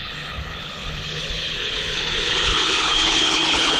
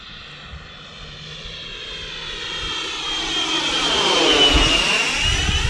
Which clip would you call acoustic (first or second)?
second